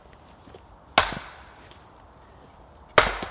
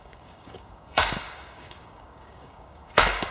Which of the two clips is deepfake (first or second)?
second